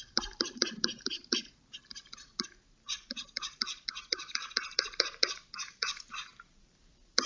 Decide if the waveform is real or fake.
fake